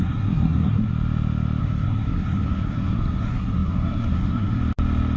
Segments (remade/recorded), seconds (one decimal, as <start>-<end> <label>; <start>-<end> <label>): 0.0-0.9 remade; 0.9-1.6 recorded; 1.6-4.6 remade; 4.6-5.2 recorded